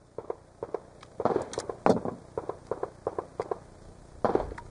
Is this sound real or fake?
real